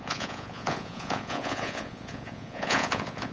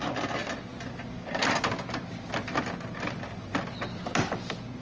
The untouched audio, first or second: second